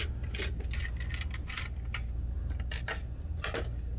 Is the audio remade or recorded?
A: recorded